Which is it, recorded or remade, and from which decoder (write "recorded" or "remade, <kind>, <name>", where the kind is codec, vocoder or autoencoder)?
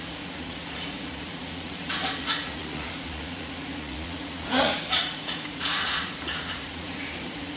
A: remade, vocoder, Vocos